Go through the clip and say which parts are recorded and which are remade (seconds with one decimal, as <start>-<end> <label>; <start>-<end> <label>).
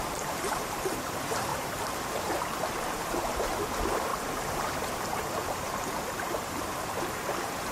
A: 0.0-7.7 remade